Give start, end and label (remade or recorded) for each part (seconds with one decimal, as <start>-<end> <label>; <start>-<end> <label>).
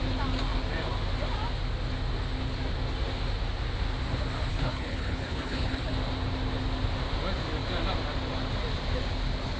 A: 0.0-4.5 recorded; 4.5-5.8 remade; 5.8-9.6 recorded